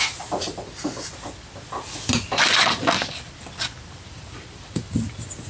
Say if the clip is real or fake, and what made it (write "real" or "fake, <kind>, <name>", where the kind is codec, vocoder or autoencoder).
real